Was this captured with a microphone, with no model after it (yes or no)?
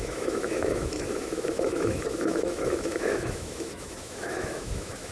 no